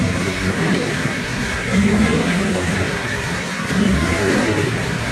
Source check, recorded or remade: remade